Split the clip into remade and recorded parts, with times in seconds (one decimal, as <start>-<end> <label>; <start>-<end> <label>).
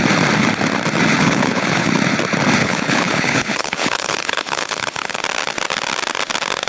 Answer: 0.0-1.2 recorded; 1.2-1.9 remade; 1.9-2.6 recorded; 2.6-5.2 remade; 5.2-6.7 recorded